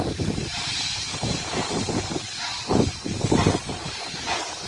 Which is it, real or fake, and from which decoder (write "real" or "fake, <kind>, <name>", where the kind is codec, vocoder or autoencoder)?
fake, vocoder, BigVGAN v2